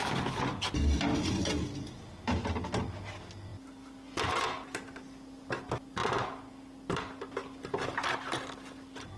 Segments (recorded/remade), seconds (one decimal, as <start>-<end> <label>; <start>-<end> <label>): 0.0-9.2 recorded